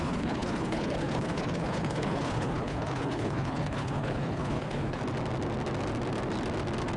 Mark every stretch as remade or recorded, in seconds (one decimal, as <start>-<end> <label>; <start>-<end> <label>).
0.0-5.0 remade; 5.0-7.0 recorded